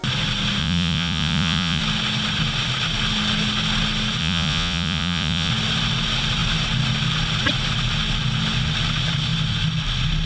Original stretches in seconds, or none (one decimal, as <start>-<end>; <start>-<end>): 0.0-0.6; 1.8-4.2; 5.5-10.3